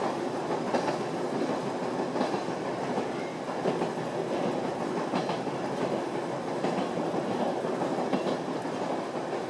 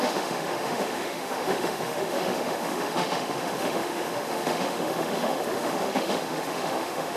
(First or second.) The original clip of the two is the first